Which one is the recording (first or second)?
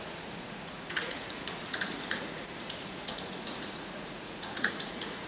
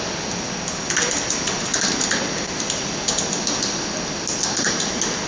second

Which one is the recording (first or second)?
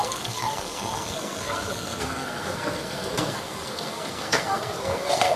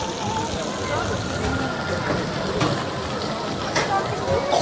second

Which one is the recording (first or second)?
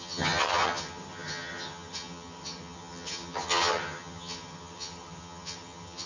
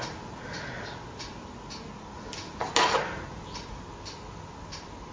second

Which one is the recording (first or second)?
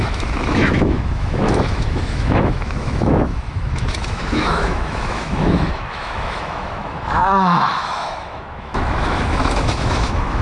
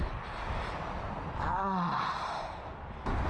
second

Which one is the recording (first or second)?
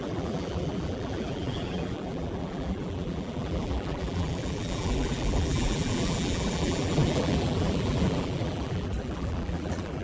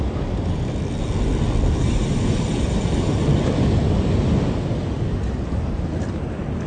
second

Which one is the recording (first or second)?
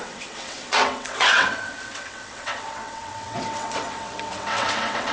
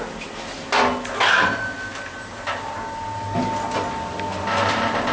second